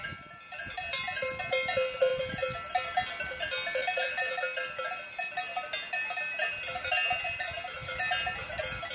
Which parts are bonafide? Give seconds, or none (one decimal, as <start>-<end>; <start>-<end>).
0.0-8.9